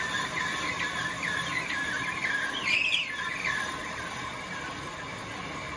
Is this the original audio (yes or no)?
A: yes